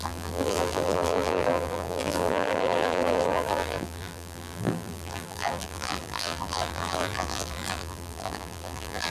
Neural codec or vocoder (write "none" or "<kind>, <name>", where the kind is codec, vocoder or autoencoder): vocoder, BigVGAN v2